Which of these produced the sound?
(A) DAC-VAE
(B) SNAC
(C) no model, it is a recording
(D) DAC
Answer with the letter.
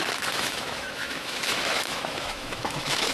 A